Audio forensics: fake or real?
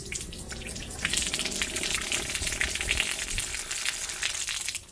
real